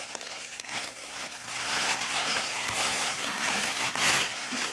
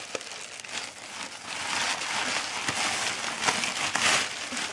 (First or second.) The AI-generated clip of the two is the first